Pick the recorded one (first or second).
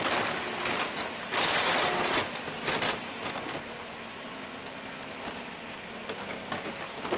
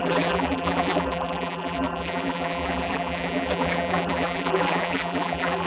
first